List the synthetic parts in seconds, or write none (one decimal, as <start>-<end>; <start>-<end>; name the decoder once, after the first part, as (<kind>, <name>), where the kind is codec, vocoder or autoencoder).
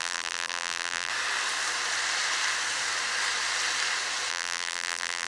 0.0-1.1 (vocoder, BigVGAN v2); 4.3-5.3